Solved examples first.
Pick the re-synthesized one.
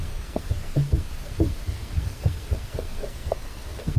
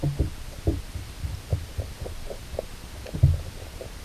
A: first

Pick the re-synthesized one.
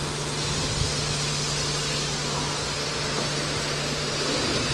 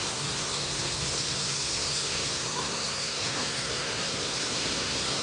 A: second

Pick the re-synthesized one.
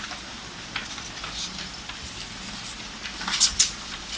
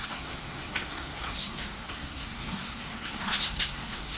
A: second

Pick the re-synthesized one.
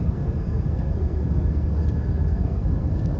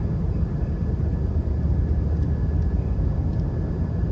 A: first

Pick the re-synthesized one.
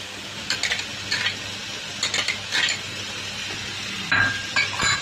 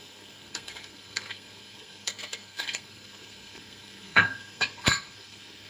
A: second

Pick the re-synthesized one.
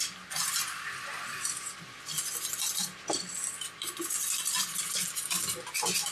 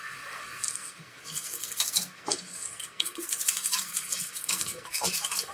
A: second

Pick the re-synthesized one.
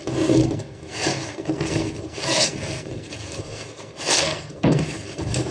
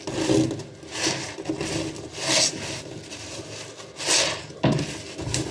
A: first